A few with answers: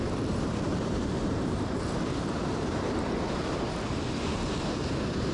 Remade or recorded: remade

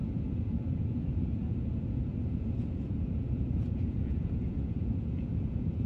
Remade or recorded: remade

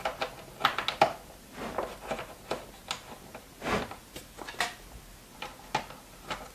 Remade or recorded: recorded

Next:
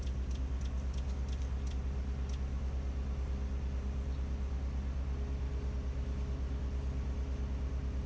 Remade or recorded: recorded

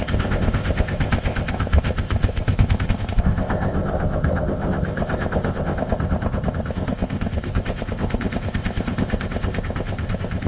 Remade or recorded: remade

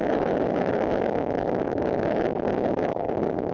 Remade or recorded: remade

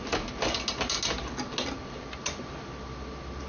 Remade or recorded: recorded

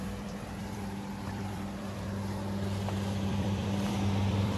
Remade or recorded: remade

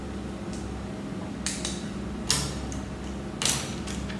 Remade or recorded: recorded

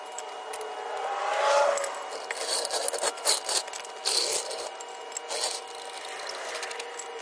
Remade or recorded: recorded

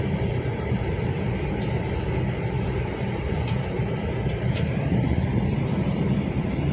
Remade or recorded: remade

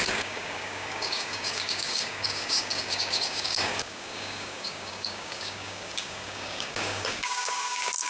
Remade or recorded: remade